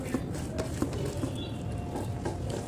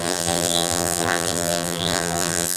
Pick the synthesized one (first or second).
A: second